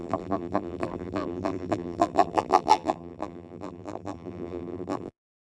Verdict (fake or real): fake